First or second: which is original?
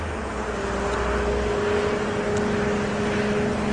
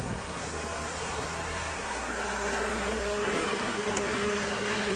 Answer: first